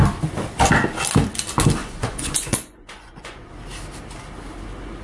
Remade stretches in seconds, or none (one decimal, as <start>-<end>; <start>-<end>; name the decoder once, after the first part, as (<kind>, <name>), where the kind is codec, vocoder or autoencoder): 1.8-3.5 (vocoder, Vocos)